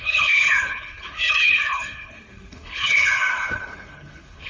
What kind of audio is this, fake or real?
fake